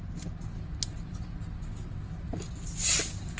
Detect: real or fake real